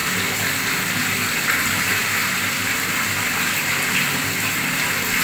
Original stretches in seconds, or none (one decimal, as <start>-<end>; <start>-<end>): 0.0-5.2